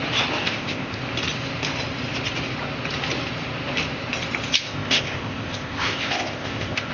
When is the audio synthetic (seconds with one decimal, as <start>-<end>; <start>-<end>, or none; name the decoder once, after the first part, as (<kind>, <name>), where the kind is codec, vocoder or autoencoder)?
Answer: 0.4-1.0 (codec, ZipCodec); 4.6-6.9